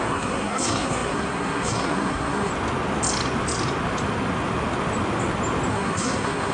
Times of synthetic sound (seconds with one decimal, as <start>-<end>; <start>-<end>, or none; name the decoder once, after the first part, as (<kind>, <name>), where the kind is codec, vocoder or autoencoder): 0.0-2.5 (codec, SNAC); 5.7-6.5